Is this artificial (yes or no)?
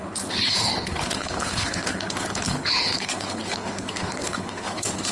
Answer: yes